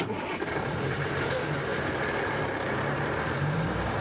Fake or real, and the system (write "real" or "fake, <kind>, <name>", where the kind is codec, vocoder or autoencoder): fake, vocoder, BigVGAN v2